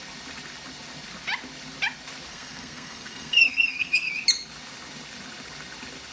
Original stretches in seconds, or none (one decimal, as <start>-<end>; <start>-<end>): 0.0-2.3; 4.1-6.1